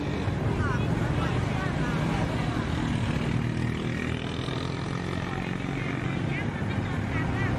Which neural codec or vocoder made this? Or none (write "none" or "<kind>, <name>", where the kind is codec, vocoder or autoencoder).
none